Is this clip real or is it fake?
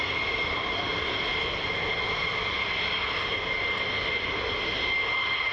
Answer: real